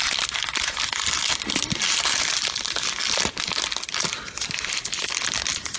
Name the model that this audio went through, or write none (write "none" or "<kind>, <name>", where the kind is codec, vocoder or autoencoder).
none